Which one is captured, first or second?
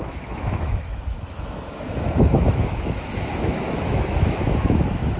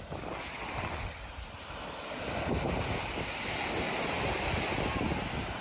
second